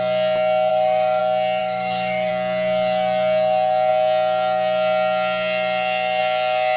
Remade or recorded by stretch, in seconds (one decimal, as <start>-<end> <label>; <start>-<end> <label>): 0.0-0.7 recorded; 0.7-1.2 remade; 1.2-1.6 recorded; 1.6-2.3 remade; 2.3-6.8 recorded